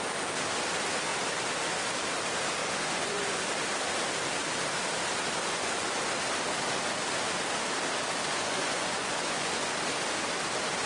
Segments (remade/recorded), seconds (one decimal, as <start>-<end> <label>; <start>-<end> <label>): 0.0-2.6 recorded; 2.6-3.4 remade; 3.4-5.4 recorded; 5.4-6.1 remade; 6.1-8.2 recorded; 8.2-9.7 remade; 9.7-10.9 recorded